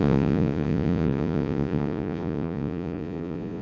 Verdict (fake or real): fake